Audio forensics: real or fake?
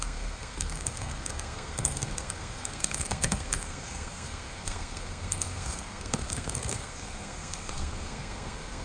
fake